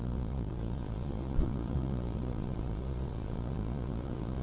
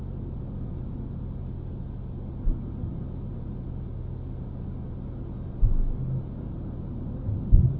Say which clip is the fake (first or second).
first